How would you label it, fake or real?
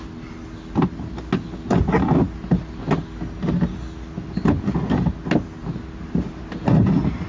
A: real